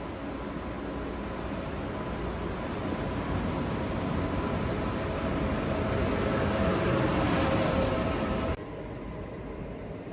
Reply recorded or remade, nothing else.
recorded